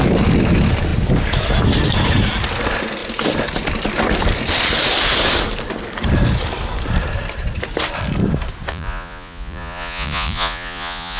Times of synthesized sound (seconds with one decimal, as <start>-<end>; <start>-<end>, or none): 8.7-11.2